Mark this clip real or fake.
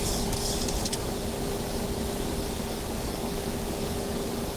fake